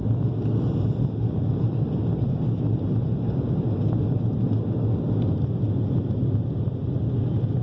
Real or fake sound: real